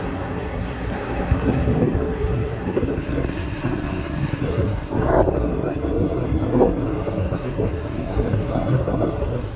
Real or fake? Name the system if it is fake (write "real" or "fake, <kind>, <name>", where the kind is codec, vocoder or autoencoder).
fake, codec, SNAC